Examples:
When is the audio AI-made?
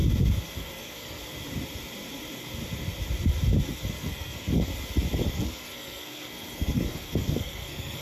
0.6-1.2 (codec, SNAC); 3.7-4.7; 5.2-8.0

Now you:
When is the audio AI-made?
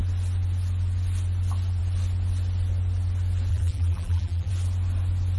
3.5-4.5 (vocoder, BigVGAN v2)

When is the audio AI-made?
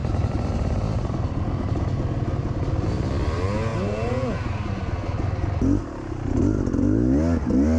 0.0-1.4 (vocoder, BigVGAN v2)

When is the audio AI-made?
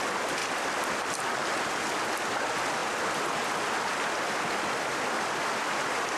none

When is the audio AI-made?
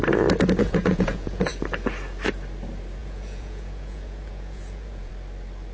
0.6-1.5 (vocoder, Vocos); 3.0-5.1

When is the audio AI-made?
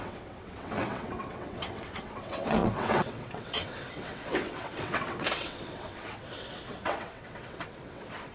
0.0-8.3 (vocoder, WaveNeXt)